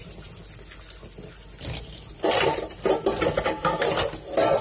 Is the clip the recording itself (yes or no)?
yes